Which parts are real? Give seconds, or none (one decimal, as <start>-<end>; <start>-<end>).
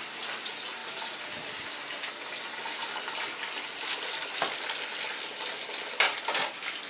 0.0-6.9